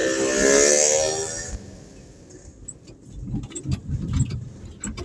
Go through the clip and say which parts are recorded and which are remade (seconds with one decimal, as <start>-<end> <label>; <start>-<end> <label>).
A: 0.0-5.0 recorded